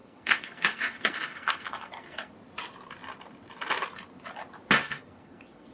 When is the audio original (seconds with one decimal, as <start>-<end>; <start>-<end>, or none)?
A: 2.3-4.8